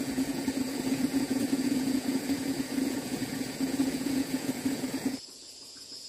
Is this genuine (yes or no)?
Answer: no